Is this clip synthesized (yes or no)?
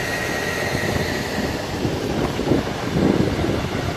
no